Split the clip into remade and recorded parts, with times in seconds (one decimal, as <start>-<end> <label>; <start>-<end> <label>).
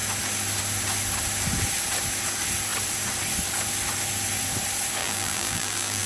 0.0-5.0 recorded; 5.0-6.1 remade